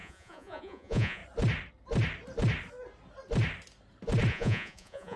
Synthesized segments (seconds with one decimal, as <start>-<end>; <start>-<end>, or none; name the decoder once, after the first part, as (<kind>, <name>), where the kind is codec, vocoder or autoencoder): 0.0-1.2 (vocoder, Vocos); 4.3-5.2